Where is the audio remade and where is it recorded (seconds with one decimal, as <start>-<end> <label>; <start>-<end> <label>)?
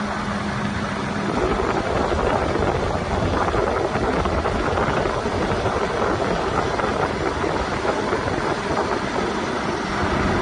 0.0-6.9 recorded; 6.9-9.9 remade; 9.9-10.4 recorded